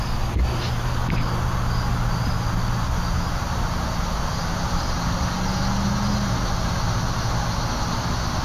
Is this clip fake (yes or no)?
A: no